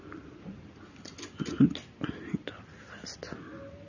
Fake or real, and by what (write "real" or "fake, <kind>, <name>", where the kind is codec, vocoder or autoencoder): real